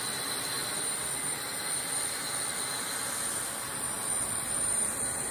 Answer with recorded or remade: recorded